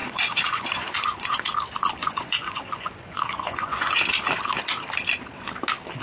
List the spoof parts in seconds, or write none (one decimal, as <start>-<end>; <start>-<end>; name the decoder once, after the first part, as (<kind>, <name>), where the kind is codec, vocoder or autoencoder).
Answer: 0.0-1.4 (vocoder, Vocos); 2.0-4.0